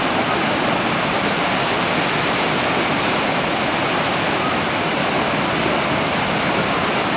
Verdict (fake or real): real